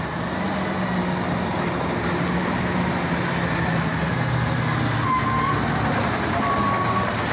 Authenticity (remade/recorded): recorded